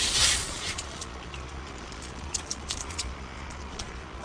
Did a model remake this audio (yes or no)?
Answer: yes